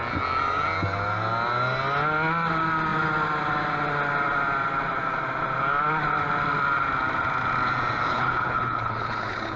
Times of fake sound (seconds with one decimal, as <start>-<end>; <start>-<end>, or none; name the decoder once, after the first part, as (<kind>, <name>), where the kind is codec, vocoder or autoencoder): 8.1-9.6 (codec, HILCodec)